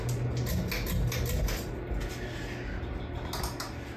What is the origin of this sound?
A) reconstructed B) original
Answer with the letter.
B